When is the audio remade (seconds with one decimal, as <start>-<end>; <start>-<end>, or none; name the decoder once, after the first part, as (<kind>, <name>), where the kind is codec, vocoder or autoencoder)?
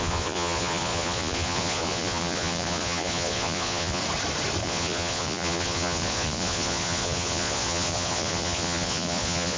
0.0-4.0 (vocoder, Vocos); 4.6-9.6